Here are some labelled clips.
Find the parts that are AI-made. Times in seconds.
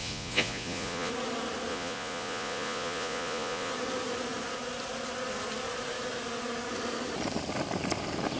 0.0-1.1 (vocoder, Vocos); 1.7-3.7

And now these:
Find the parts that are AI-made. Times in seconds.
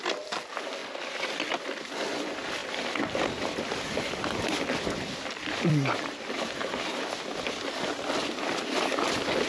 2.6-7.5 (vocoder, BigVGAN v2)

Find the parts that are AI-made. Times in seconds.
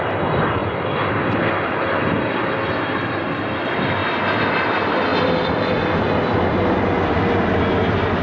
0.6-1.5 (vocoder, BigVGAN v2); 5.1-6.0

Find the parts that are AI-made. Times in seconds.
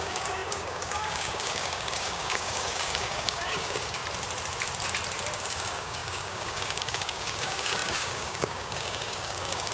0.0-4.0 (codec, DAC); 5.4-9.7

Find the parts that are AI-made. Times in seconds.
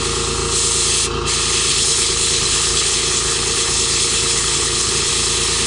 1.7-5.1 (codec, HILCodec)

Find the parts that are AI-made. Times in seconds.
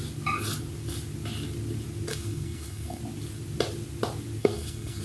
2.1-3.0 (codec, SNAC); 4.4-5.0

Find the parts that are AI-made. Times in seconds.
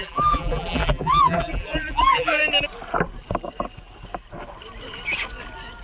0.0-2.4 (vocoder, BigVGAN v2)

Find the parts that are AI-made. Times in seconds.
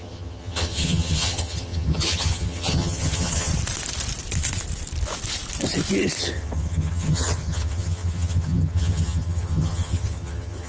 0.0-3.5 (vocoder, HiFi-GAN); 6.2-10.7